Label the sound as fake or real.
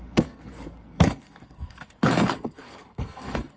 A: fake